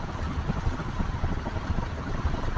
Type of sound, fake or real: real